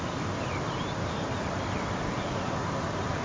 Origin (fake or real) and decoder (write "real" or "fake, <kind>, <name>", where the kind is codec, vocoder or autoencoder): real